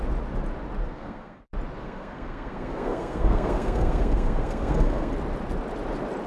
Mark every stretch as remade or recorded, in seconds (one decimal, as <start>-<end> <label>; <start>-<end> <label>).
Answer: 0.0-0.8 recorded; 0.8-1.4 remade; 1.4-1.8 recorded; 1.8-5.1 remade; 5.1-6.3 recorded